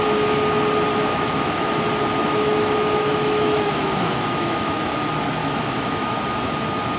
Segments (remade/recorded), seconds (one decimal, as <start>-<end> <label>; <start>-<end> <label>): 0.0-1.1 recorded; 1.1-1.7 remade; 1.7-2.2 recorded; 2.2-4.9 remade; 4.9-5.4 recorded; 5.4-6.2 remade; 6.2-7.0 recorded